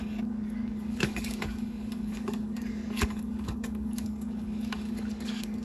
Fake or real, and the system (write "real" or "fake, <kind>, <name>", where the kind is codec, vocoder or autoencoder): fake, codec, DAC